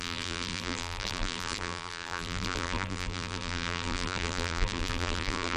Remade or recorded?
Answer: remade